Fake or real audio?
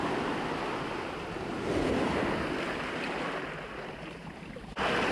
real